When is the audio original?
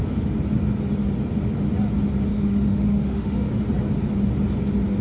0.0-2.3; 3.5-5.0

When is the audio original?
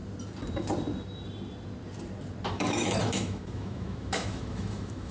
0.0-2.5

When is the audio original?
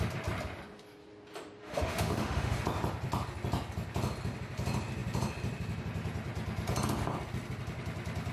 0.0-1.6; 2.6-8.3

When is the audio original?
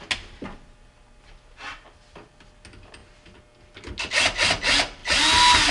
0.0-5.7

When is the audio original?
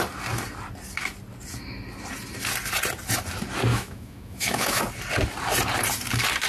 0.0-3.7; 4.8-6.5